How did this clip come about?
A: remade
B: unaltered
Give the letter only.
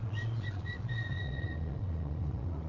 A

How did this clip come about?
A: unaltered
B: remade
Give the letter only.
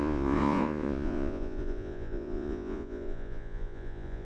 B